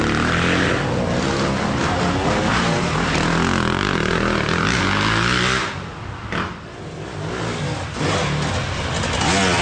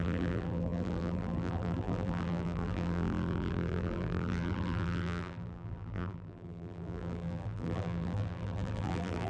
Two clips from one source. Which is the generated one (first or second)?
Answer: second